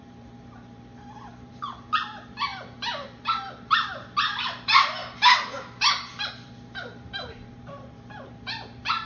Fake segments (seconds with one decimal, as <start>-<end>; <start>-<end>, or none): 0.0-5.0; 6.3-9.1